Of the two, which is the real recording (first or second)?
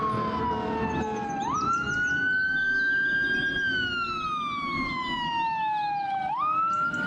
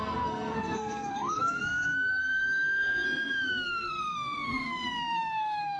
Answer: first